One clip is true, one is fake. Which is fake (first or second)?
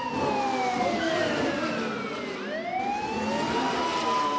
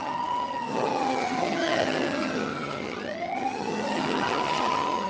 second